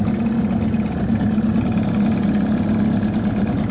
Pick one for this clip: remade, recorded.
recorded